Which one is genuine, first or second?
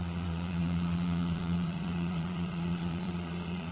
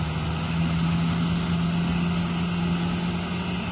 second